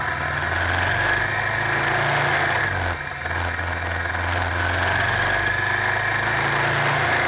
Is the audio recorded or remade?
recorded